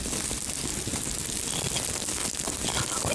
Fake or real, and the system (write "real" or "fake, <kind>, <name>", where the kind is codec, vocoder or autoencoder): real